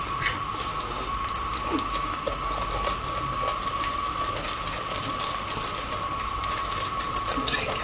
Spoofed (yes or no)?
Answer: no